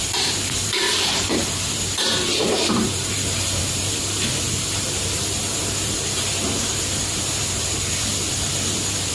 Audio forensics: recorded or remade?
remade